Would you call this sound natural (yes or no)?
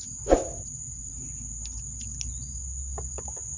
yes